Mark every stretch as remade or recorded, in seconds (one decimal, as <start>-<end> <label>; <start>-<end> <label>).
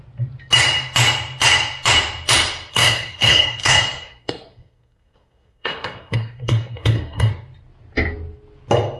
0.0-2.7 recorded; 2.7-7.3 remade; 7.3-9.0 recorded